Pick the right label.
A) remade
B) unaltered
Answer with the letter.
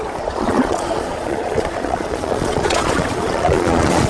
A